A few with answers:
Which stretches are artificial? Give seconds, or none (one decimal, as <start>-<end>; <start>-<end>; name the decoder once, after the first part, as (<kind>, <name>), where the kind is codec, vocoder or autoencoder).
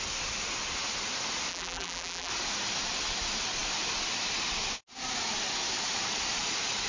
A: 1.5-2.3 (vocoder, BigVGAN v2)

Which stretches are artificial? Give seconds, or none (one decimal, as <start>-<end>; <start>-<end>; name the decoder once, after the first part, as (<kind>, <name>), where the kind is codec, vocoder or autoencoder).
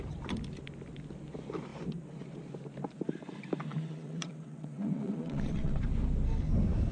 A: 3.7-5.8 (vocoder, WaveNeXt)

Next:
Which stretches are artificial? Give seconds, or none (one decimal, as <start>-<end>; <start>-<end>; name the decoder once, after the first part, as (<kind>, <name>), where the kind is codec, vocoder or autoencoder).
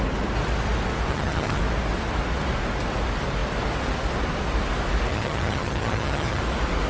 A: 1.1-1.6 (vocoder, HiFi-GAN); 5.1-6.4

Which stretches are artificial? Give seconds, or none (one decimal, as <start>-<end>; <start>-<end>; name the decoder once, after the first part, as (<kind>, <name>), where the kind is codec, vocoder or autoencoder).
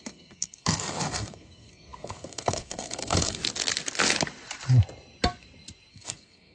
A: 0.0-3.4 (codec, SNAC); 5.9-6.5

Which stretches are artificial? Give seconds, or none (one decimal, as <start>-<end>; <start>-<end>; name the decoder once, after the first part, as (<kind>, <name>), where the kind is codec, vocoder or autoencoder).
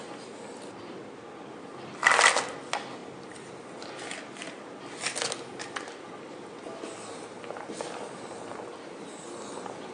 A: none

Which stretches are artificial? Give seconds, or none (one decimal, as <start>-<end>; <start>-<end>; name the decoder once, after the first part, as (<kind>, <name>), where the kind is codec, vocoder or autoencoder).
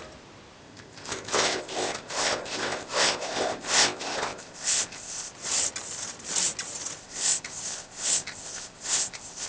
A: 0.6-5.3 (codec, ZipCodec); 7.0-9.5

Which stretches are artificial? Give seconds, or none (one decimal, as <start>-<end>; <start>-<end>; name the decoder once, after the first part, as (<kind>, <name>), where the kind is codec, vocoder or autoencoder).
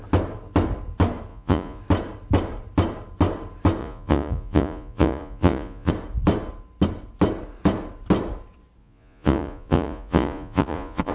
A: 1.3-1.8 (vocoder, Vocos); 3.8-5.9; 8.8-11.1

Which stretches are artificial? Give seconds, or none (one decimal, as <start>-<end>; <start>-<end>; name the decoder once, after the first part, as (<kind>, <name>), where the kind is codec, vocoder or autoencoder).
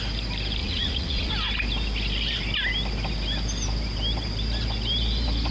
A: 0.6-1.3 (vocoder, Vocos)